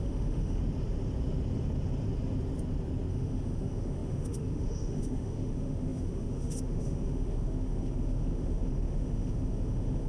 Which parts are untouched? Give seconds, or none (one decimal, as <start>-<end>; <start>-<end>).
0.6-3.1